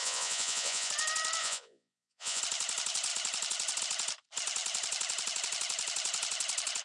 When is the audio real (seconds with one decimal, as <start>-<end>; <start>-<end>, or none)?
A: 0.9-1.4; 2.4-6.8